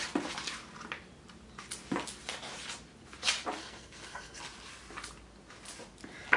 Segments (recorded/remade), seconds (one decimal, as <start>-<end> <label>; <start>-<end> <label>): 0.0-3.6 recorded; 3.6-4.4 remade; 4.4-6.4 recorded

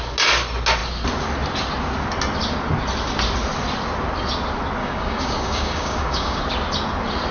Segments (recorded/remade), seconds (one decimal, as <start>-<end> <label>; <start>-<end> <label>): 0.0-4.8 recorded; 4.8-6.4 remade; 6.4-7.3 recorded

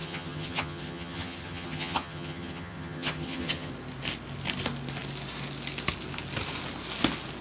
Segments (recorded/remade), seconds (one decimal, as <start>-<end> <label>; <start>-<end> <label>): 0.0-3.7 remade; 3.7-7.4 recorded

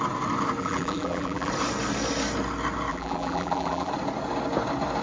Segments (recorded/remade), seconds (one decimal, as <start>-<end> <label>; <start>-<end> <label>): 0.0-0.6 recorded; 0.6-1.5 remade; 1.5-2.9 recorded; 2.9-3.9 remade; 3.9-5.0 recorded

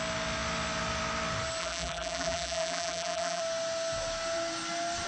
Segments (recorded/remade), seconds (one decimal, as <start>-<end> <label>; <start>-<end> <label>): 0.0-1.6 recorded; 1.6-3.4 remade; 3.4-5.1 recorded

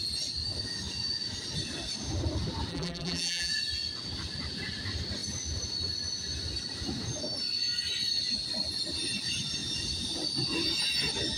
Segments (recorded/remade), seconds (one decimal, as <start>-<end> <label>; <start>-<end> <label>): 0.0-2.7 recorded; 2.7-3.5 remade; 3.5-11.4 recorded

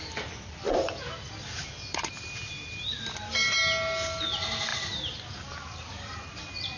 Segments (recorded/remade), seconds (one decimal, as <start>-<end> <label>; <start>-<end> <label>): 0.0-6.8 recorded